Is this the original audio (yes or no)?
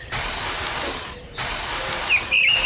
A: yes